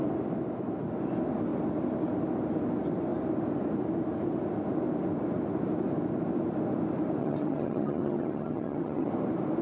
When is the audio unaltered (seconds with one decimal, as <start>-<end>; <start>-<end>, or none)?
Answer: 0.0-7.2; 9.1-9.6